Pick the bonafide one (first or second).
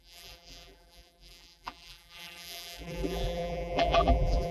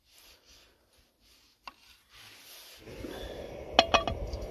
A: second